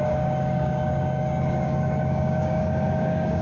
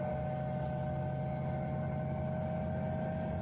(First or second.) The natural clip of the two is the second